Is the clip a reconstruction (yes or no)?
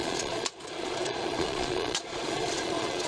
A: yes